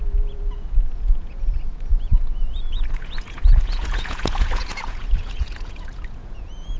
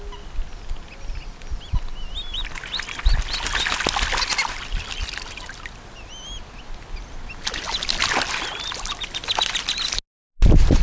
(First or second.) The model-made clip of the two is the first